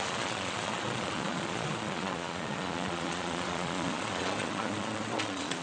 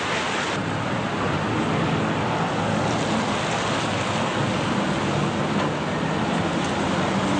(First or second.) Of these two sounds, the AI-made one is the first